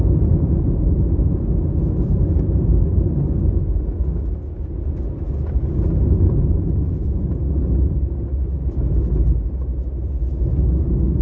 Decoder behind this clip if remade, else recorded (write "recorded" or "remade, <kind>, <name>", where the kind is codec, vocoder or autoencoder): recorded